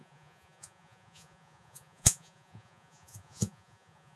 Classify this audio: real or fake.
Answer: fake